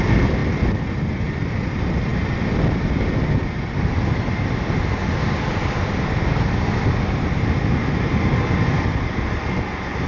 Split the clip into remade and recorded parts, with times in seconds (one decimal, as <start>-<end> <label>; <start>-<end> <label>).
0.0-10.1 recorded